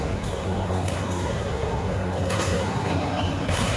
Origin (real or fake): fake